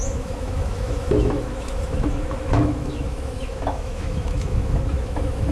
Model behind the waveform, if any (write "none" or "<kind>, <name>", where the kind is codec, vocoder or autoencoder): autoencoder, DAC-VAE